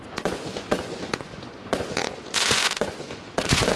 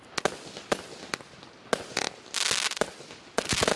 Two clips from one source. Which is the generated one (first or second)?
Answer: first